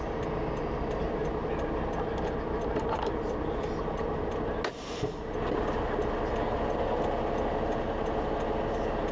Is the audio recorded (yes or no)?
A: yes